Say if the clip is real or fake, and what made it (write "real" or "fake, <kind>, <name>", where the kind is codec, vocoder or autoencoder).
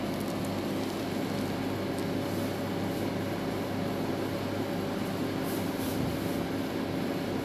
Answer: real